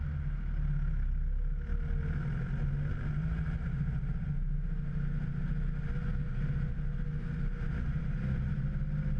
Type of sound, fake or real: real